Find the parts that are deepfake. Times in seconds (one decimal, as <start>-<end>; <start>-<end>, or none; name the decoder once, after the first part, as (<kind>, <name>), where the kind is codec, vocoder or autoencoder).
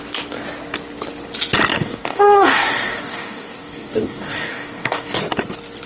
1.7-5.2 (codec, DAC)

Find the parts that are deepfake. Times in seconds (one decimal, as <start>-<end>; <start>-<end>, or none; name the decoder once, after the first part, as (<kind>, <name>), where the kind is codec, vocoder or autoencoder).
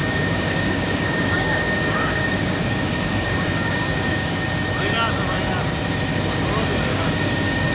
0.0-4.4 (codec, DAC); 6.9-7.7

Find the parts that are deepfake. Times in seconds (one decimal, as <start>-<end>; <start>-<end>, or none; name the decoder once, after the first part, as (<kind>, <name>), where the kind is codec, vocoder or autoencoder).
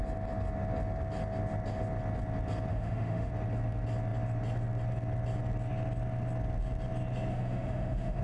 2.7-3.3 (autoencoder, DAC-VAE); 7.3-8.2